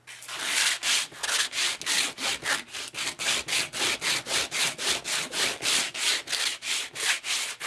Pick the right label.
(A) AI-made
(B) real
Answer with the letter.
B